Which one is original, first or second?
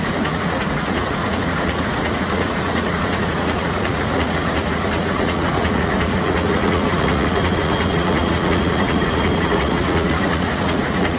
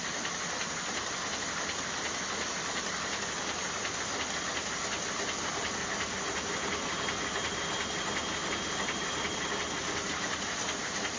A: second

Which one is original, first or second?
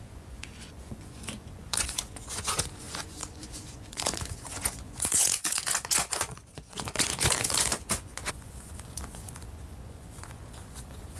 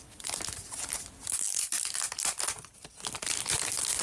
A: second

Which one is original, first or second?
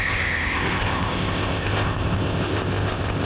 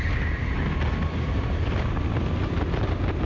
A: second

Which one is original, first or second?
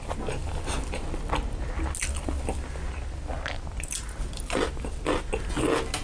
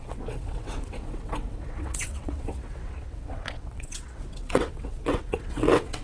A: first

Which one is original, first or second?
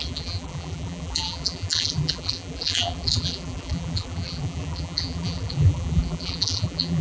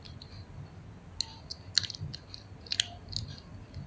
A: second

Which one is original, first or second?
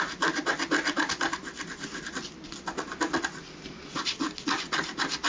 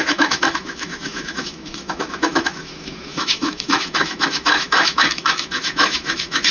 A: first